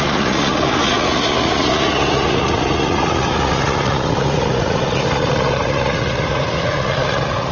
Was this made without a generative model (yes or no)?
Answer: no